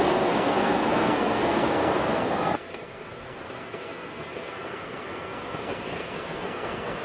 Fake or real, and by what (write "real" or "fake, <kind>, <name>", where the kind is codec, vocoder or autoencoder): fake, codec, SNAC